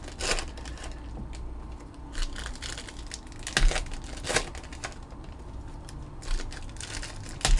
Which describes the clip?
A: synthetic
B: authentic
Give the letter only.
B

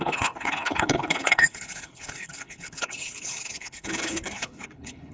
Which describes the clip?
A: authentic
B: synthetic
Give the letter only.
B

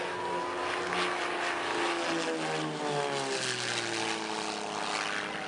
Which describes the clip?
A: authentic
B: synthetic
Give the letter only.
A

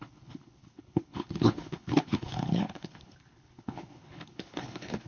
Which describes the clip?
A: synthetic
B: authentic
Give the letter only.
A